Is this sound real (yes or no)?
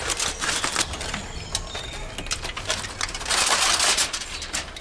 yes